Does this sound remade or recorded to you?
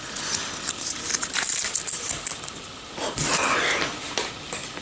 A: recorded